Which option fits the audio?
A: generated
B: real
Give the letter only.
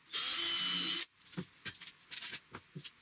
B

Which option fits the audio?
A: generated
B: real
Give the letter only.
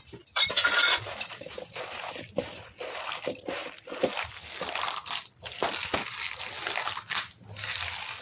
A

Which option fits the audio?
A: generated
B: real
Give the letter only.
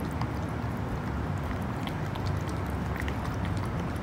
B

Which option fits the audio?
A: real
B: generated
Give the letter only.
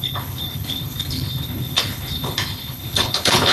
B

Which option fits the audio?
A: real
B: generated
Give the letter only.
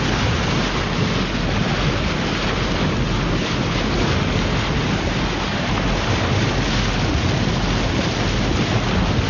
A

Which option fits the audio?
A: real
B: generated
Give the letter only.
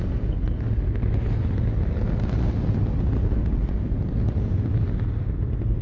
A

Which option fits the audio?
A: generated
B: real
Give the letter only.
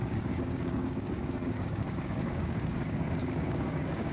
A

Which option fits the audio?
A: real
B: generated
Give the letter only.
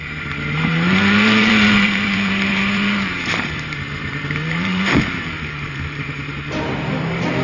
B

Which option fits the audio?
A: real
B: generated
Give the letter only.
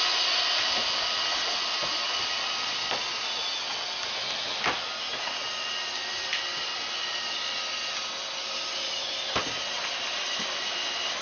A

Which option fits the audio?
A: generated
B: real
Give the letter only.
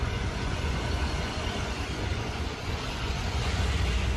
A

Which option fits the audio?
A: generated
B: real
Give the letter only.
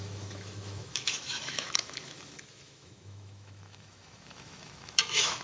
A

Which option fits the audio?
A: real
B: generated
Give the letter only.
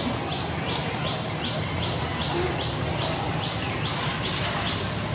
A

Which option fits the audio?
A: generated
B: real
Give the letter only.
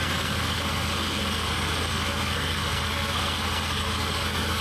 A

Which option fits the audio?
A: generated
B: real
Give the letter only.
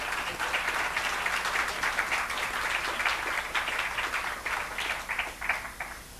B